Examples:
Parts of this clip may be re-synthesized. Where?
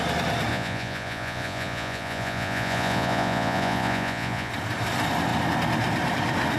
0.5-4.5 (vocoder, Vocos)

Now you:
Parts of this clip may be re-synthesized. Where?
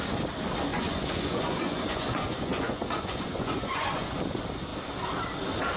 0.7-4.2 (vocoder, Vocos)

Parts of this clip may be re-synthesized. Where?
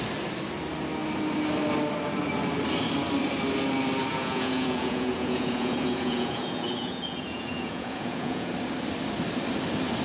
4.1-8.5 (vocoder, Vocos)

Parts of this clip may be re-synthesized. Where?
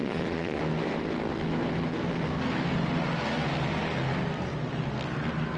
0.0-0.6 (vocoder, Vocos)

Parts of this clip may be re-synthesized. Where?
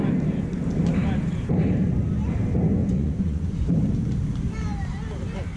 2.8-3.6 (vocoder, Vocos)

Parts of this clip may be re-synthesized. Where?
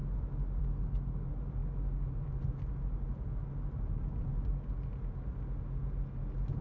none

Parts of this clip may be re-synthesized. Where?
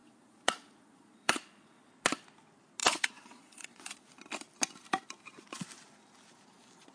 0.0-1.9 (vocoder, Vocos); 2.8-4.1